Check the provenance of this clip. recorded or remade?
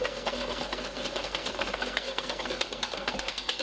remade